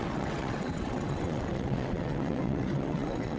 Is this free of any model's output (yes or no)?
no